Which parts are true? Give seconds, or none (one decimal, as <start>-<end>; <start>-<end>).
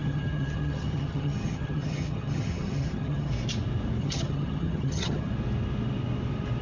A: 3.3-4.0; 5.3-6.6